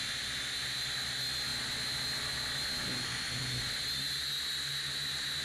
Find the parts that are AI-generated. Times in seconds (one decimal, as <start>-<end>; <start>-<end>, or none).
none